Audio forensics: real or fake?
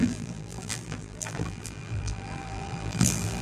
fake